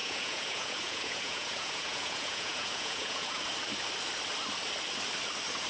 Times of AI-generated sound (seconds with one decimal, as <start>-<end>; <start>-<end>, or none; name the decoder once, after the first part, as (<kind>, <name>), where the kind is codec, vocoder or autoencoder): 0.0-3.4 (vocoder, Vocos)